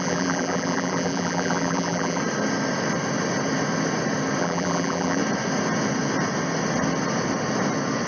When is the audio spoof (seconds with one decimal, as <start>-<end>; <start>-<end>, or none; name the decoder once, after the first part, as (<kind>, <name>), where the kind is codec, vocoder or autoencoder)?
0.0-2.2 (vocoder, BigVGAN v2); 4.4-5.2